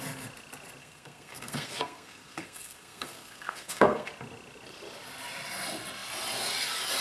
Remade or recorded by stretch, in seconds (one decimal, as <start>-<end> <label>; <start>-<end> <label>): 0.0-0.8 recorded; 0.8-4.1 remade; 4.1-7.0 recorded